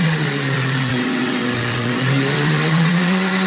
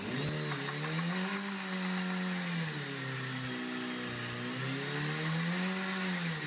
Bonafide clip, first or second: second